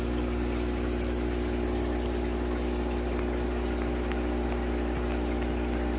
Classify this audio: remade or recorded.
recorded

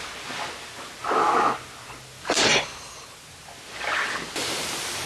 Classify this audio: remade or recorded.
recorded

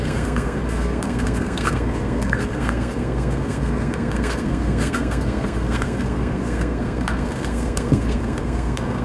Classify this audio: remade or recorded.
remade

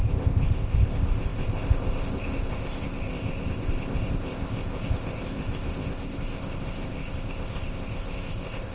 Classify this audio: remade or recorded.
remade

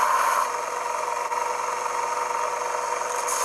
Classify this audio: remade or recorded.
recorded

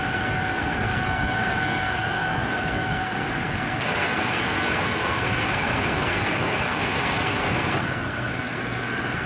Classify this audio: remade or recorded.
remade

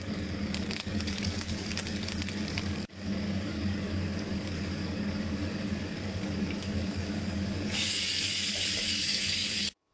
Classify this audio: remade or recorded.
remade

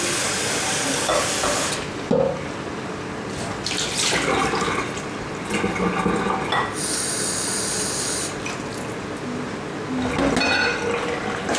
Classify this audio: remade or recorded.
recorded